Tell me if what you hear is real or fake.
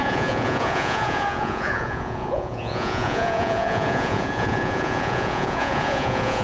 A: fake